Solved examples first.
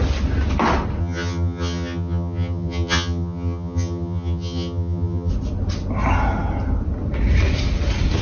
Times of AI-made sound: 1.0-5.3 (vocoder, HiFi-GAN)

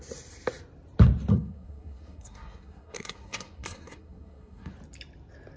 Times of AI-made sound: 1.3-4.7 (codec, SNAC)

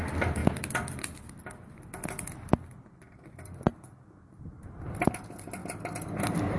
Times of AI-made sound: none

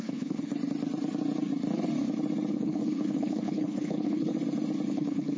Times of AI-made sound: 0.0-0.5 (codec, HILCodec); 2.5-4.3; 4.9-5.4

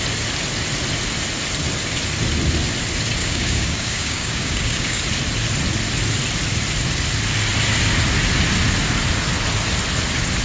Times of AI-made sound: 3.2-5.0 (codec, DAC)

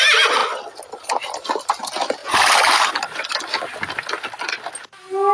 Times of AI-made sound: none

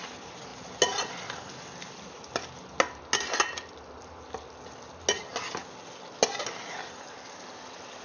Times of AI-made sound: none

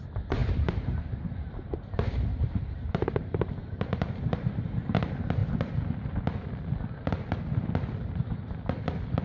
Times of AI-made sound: 0.4-5.0 (vocoder, BigVGAN v2)